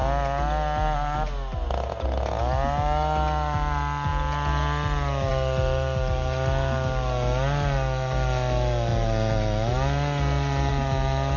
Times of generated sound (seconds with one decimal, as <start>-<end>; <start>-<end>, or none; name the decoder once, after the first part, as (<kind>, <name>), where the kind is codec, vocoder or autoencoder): none